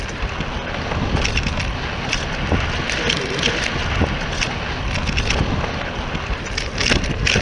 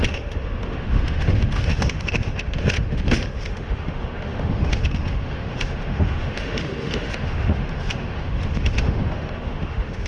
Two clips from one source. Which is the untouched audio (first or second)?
first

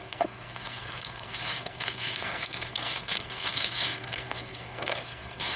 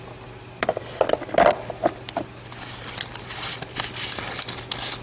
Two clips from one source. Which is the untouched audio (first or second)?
second